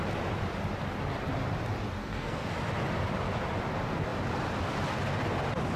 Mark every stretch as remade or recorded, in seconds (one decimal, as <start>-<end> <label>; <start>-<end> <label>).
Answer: 0.0-2.0 recorded; 2.0-2.5 remade; 2.5-5.8 recorded